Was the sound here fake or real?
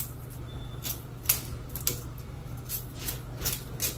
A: real